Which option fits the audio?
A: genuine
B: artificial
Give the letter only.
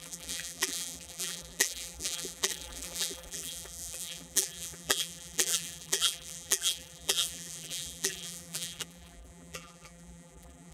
B